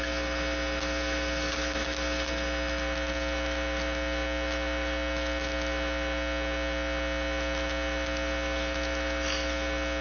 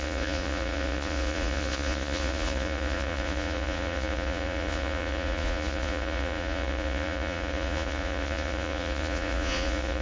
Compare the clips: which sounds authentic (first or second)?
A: first